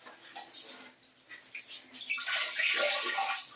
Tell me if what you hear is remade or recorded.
recorded